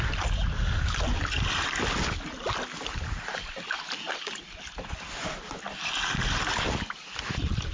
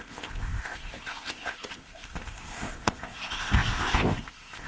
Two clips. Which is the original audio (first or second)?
first